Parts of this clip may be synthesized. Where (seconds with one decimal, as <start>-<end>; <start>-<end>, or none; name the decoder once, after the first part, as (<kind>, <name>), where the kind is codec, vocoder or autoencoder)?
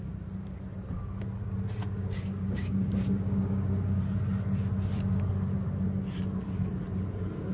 1.8-4.0 (codec, DAC)